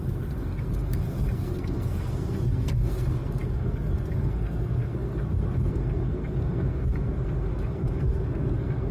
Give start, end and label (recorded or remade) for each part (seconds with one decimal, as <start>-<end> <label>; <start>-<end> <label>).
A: 0.0-8.9 remade